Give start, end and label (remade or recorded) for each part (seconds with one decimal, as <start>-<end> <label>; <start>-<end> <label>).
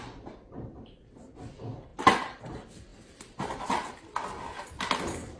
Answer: 0.0-5.4 recorded